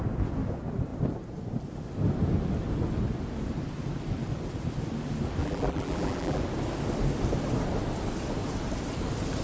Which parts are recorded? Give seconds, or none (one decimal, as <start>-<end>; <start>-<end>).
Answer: 0.0-5.4; 6.4-9.4